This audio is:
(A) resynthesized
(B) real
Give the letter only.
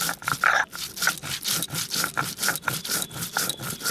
B